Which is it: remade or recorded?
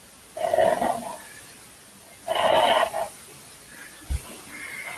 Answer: recorded